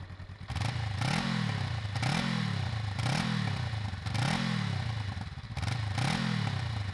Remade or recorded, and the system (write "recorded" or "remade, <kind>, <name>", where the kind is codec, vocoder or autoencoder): recorded